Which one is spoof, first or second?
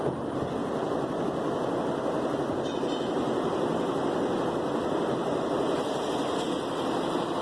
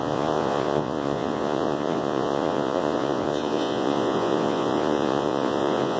second